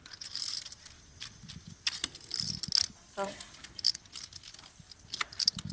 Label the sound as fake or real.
real